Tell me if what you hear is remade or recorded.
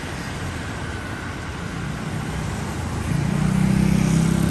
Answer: recorded